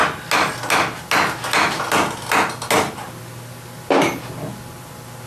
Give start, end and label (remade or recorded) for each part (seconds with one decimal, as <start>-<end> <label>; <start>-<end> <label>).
0.0-5.3 recorded